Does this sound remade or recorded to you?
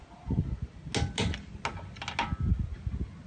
recorded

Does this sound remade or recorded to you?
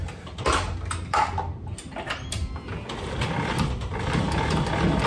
recorded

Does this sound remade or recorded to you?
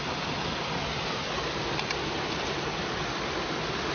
recorded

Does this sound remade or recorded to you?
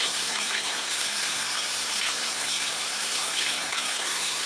remade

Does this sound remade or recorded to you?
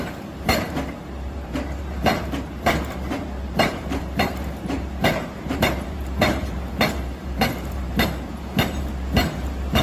remade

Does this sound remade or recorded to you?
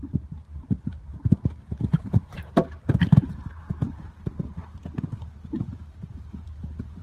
remade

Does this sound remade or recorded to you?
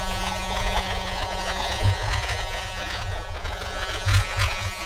remade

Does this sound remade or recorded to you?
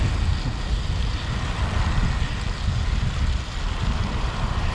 recorded